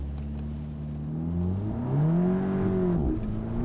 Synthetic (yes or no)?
no